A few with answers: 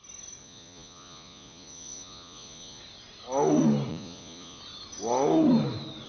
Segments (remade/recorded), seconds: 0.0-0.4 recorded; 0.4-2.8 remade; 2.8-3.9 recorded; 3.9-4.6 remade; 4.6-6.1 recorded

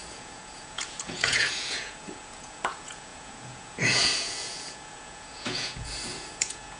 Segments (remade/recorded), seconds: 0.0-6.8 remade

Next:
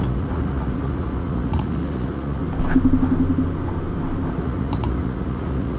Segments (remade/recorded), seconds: 0.0-2.4 remade; 2.4-4.3 recorded; 4.3-5.8 remade

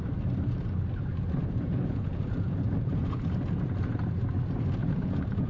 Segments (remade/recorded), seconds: 0.0-1.1 recorded; 1.1-4.0 remade; 4.0-4.8 recorded; 4.8-5.5 remade

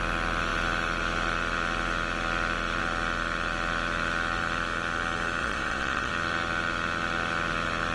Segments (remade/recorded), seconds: 0.0-5.4 recorded; 5.4-6.1 remade; 6.1-7.9 recorded